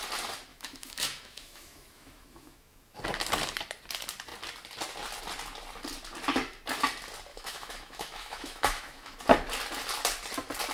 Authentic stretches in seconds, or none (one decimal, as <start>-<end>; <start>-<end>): 0.0-0.5; 3.0-7.3; 9.2-10.7